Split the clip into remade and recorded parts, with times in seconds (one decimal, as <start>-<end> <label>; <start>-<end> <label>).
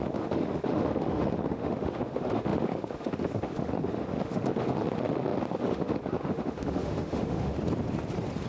0.0-7.5 remade; 7.5-8.5 recorded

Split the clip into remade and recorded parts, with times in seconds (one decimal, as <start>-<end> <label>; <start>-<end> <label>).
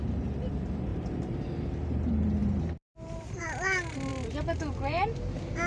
0.0-0.9 recorded; 0.9-1.5 remade; 1.5-2.4 recorded; 2.4-3.4 remade; 3.4-5.7 recorded